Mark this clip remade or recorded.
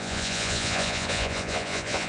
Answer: remade